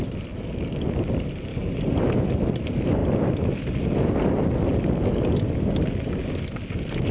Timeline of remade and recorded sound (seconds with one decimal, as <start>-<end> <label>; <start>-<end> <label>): 0.0-1.5 recorded; 1.5-2.0 remade; 2.0-7.1 recorded